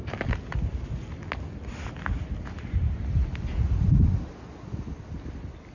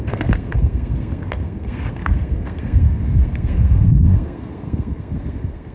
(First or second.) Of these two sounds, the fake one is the second